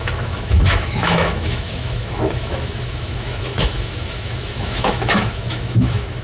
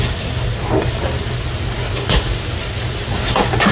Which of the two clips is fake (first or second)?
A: first